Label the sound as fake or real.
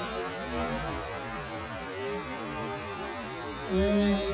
real